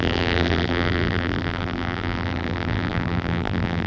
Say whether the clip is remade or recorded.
remade